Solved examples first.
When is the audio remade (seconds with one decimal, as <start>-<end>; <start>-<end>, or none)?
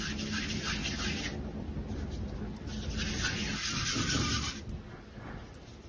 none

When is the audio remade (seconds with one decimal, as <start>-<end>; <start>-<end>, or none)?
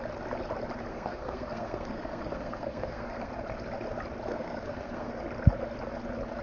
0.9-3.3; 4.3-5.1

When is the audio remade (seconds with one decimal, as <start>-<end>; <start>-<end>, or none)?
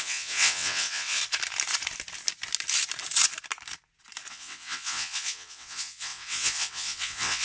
0.0-1.2; 4.3-7.4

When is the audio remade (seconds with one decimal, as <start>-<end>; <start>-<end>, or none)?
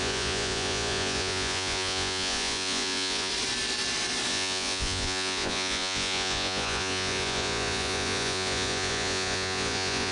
0.0-3.3; 4.3-10.1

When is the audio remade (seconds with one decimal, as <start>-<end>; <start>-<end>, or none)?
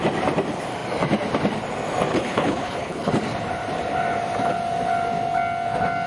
2.1-3.1